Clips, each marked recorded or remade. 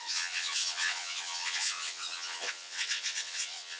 remade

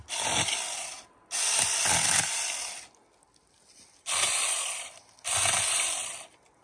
recorded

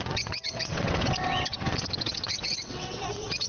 remade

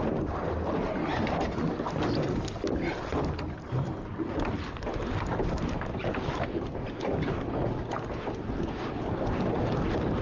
recorded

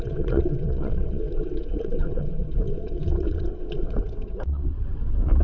remade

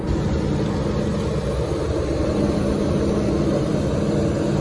recorded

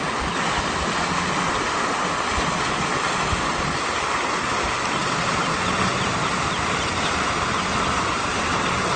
recorded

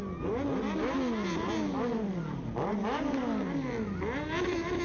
recorded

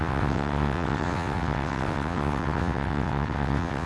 remade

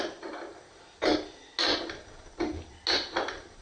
recorded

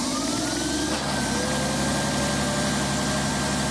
recorded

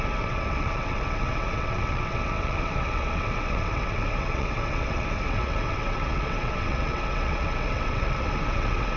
remade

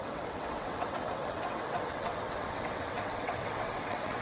remade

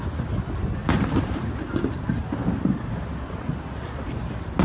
recorded